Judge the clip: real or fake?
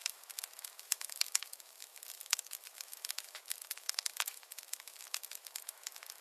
fake